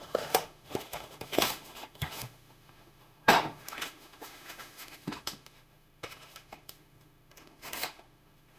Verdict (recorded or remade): remade